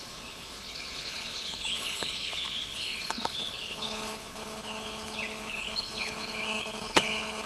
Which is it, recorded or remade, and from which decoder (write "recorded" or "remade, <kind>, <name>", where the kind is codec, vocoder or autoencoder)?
remade, codec, HILCodec